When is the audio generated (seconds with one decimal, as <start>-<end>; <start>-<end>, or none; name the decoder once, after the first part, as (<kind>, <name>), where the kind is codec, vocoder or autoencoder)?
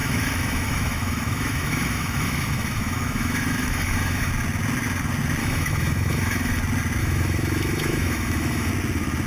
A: 0.0-4.3 (autoencoder, DAC-VAE); 5.4-6.6; 7.0-8.7